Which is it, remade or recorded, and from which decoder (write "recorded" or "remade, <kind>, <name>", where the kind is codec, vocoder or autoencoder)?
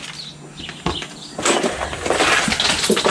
recorded